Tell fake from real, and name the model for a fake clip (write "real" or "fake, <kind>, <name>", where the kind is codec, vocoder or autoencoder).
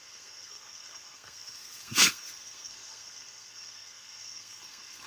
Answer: fake, codec, SNAC